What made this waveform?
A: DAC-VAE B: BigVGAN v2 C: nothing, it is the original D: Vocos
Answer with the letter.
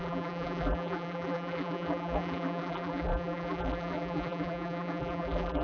B